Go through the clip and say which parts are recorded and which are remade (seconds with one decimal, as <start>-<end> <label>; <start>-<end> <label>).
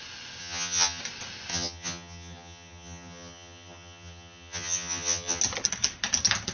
0.0-0.4 recorded; 0.4-1.0 remade; 1.0-1.5 recorded; 1.5-5.4 remade; 5.4-6.5 recorded